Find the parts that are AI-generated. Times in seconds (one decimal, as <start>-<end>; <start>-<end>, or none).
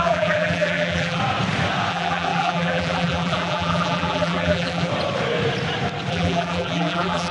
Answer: 0.0-1.2; 1.9-4.9; 6.1-7.3